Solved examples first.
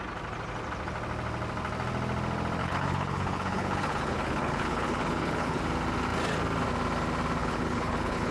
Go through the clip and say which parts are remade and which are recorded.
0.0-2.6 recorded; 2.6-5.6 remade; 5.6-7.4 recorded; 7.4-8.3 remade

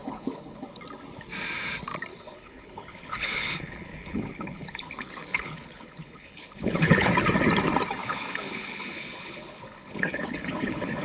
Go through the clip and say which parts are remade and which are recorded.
0.0-0.8 remade; 0.8-2.1 recorded; 2.1-7.1 remade; 7.1-8.0 recorded; 8.0-11.0 remade

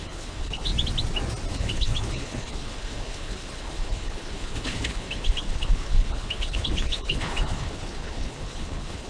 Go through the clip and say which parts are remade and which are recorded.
0.0-0.7 remade; 0.7-1.5 recorded; 1.5-9.1 remade

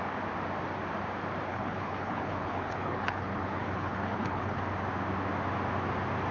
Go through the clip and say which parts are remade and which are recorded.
0.0-1.5 recorded; 1.5-4.6 remade; 4.6-6.3 recorded

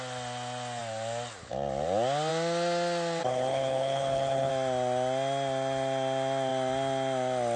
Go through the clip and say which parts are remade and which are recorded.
0.0-3.2 recorded; 3.2-4.5 remade; 4.5-7.6 recorded